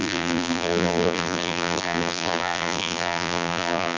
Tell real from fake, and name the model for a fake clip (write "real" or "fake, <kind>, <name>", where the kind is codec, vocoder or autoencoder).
fake, vocoder, BigVGAN v2